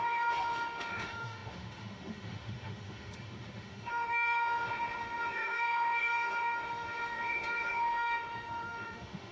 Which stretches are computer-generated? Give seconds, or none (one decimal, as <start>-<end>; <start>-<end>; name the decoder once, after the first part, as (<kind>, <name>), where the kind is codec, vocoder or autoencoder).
0.0-9.3 (autoencoder, DAC-VAE)